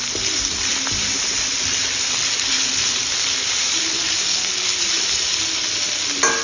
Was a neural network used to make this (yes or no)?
no